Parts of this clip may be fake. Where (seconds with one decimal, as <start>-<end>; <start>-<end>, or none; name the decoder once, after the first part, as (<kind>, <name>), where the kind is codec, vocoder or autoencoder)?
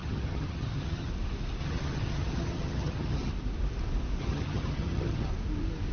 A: 0.0-1.1 (vocoder, HiFi-GAN); 1.6-3.3; 4.2-5.3